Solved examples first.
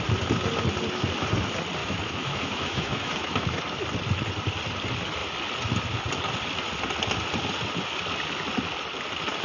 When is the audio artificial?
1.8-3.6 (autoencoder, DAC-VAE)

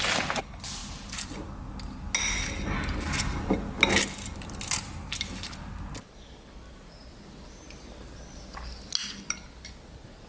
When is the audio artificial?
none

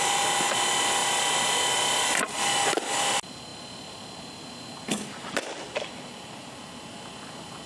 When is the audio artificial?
none

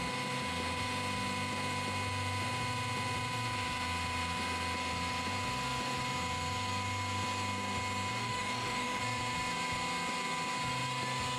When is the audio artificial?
8.2-9.0 (autoencoder, DAC-VAE)

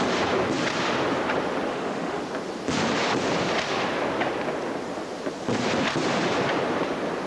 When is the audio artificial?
1.7-2.2 (autoencoder, DAC-VAE)

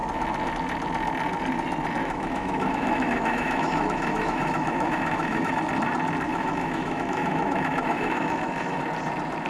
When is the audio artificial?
2.0-5.6 (autoencoder, DAC-VAE); 6.3-8.8